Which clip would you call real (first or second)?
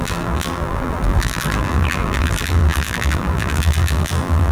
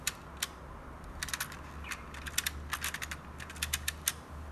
second